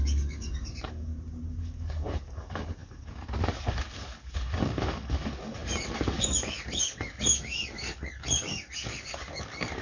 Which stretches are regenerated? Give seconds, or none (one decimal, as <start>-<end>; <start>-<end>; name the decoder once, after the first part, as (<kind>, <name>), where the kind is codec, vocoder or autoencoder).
0.0-1.1 (codec, DAC); 1.6-9.8